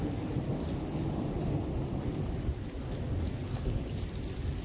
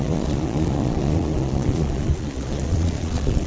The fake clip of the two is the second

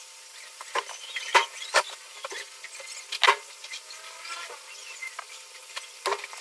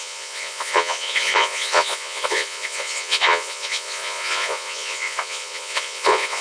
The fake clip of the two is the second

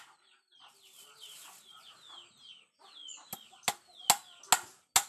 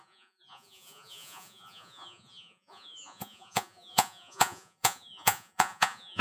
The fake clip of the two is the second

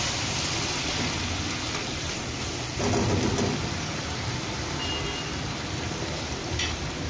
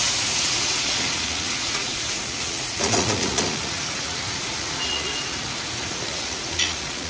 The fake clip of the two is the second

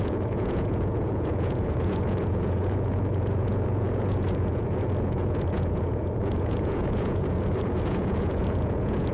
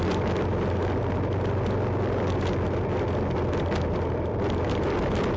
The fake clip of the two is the first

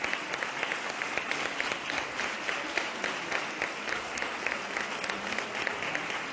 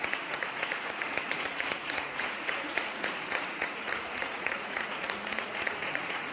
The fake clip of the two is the second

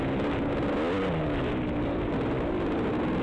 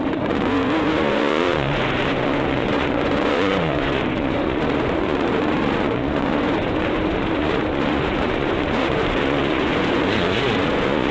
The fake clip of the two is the second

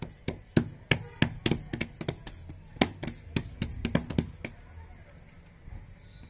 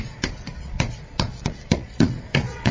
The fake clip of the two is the second